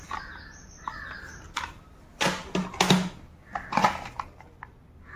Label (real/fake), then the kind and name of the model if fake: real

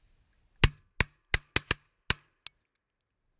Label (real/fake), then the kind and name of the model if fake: real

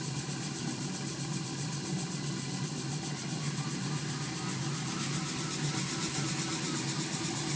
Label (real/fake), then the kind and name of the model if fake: real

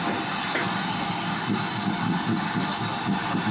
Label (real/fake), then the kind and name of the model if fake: real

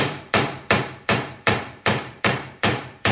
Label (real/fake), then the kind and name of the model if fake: fake, vocoder, BigVGAN v2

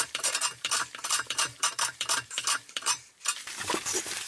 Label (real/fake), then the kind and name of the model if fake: fake, vocoder, BigVGAN v2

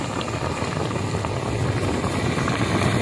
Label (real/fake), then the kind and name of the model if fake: real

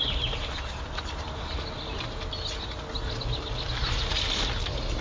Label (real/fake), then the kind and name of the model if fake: real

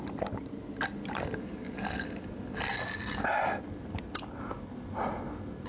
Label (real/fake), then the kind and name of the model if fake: real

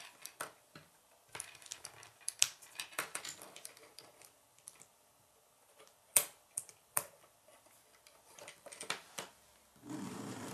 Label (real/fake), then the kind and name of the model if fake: fake, vocoder, BigVGAN v2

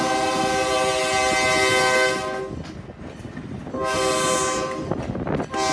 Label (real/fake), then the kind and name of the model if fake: real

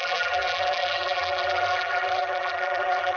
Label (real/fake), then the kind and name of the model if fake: fake, vocoder, BigVGAN v2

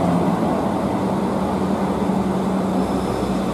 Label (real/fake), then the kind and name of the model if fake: real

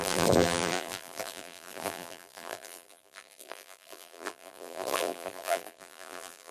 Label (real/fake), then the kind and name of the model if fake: fake, vocoder, BigVGAN v2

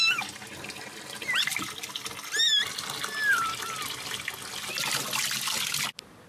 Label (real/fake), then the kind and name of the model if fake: real